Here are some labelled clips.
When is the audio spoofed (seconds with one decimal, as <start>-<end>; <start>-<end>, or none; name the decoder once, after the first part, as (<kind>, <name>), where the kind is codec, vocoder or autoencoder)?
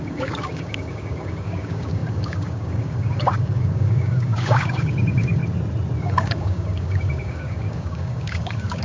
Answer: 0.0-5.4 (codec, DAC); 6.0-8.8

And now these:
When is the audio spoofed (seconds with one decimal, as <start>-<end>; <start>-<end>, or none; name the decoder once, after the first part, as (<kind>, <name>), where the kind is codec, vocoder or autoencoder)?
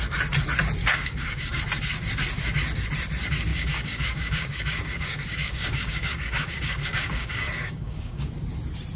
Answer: 0.8-1.6 (codec, DAC); 3.5-8.3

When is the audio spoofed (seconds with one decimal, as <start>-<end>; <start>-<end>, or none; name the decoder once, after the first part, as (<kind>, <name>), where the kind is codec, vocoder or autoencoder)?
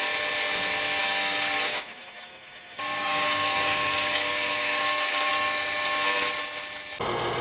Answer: 1.0-5.3 (codec, DAC)